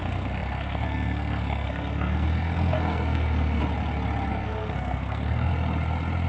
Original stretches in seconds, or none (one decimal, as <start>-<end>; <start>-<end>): 3.6-4.3; 5.5-6.3